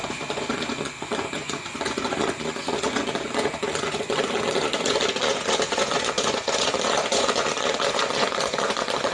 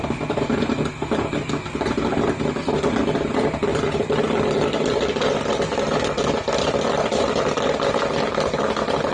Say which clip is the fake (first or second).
first